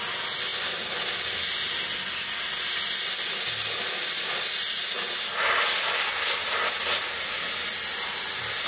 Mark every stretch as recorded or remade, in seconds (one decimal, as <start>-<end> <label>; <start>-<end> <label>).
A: 0.0-8.7 recorded